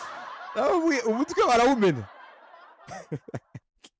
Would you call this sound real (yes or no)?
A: yes